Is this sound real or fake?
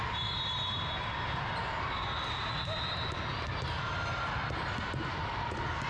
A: real